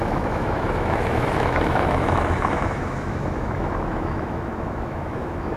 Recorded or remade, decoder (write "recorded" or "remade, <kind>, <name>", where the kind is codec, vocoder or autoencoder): remade, autoencoder, DAC-VAE